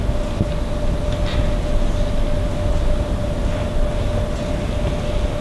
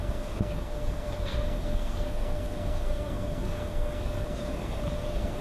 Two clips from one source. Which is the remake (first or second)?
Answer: second